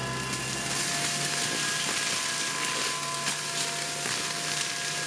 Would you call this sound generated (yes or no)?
no